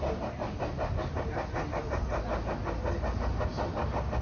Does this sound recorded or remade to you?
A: recorded